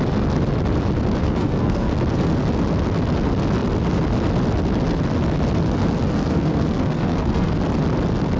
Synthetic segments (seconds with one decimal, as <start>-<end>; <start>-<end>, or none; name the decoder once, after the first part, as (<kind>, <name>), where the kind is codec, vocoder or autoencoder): 1.2-1.9 (codec, SNAC); 6.1-7.5